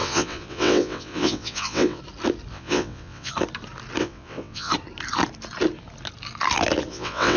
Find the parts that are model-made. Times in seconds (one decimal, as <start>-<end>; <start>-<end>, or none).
0.0-2.0; 2.5-3.3; 4.0-4.7; 6.9-7.4